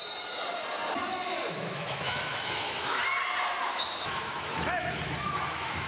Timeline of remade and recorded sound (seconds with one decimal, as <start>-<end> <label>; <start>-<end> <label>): 0.0-1.5 recorded; 1.5-3.0 remade; 3.0-3.7 recorded; 3.7-5.9 remade

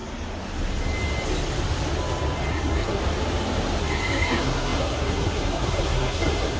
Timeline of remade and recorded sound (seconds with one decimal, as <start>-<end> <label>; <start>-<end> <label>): 0.0-2.5 recorded; 2.5-3.0 remade; 3.0-3.8 recorded; 3.8-6.6 remade

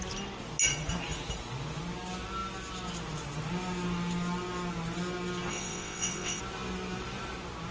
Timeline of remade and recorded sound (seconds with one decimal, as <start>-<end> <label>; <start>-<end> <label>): 0.0-5.5 recorded; 5.5-6.4 remade; 6.4-7.7 recorded

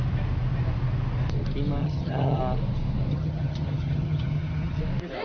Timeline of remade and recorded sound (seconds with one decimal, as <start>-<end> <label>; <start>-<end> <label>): 0.0-1.8 recorded; 1.8-2.4 remade; 2.4-3.1 recorded; 3.1-4.8 remade; 4.8-5.2 recorded

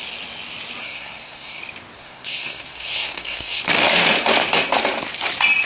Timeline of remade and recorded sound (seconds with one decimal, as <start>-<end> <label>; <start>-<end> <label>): 0.0-0.8 recorded; 0.8-1.6 remade; 1.6-2.0 recorded; 2.0-3.6 remade; 3.6-5.6 recorded

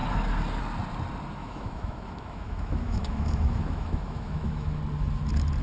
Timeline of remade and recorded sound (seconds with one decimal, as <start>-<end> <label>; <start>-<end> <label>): 0.0-1.4 recorded; 1.4-4.8 remade; 4.8-5.6 recorded